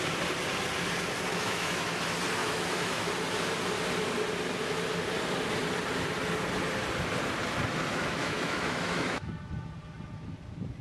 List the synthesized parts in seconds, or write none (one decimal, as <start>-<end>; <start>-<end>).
1.3-2.0; 2.4-3.1; 7.9-9.3